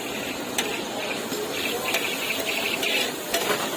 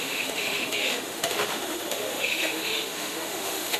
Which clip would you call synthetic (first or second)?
second